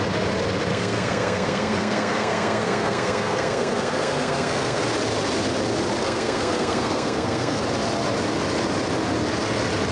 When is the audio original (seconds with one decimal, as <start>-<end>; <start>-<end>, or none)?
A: 0.0-0.7; 4.8-6.0; 7.6-9.9